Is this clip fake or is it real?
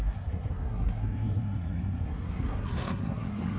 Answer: fake